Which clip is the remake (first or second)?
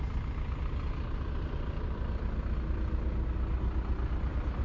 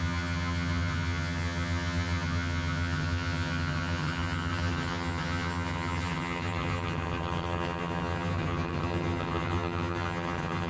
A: second